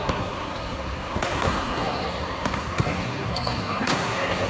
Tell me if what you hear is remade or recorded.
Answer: remade